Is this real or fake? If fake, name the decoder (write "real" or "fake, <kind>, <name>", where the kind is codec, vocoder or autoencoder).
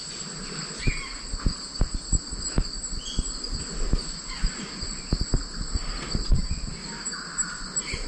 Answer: real